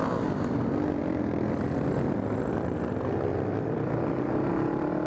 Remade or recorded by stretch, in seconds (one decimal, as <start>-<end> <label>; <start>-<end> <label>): 0.0-1.0 recorded; 1.0-1.5 remade; 1.5-3.3 recorded; 3.3-4.5 remade; 4.5-5.1 recorded